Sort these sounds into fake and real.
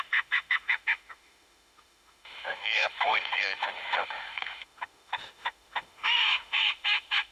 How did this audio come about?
fake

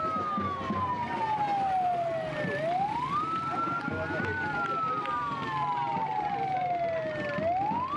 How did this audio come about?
real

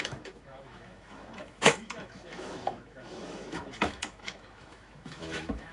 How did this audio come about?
fake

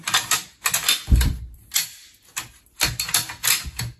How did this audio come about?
real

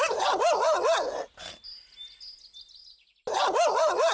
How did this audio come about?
real